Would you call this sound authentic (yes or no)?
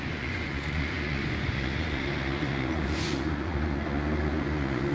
no